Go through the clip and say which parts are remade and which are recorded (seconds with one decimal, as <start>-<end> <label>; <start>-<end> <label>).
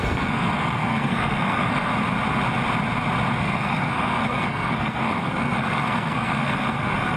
0.0-1.9 remade; 1.9-3.4 recorded; 3.4-7.2 remade